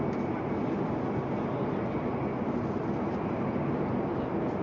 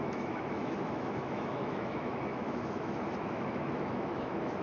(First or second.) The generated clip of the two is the second